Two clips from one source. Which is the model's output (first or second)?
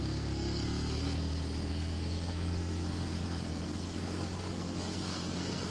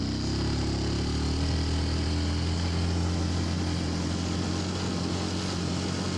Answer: first